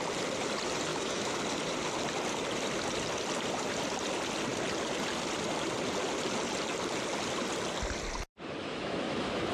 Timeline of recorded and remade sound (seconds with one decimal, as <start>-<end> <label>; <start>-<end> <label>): 0.0-0.9 recorded; 0.9-1.4 remade; 1.4-8.6 recorded; 8.6-9.5 remade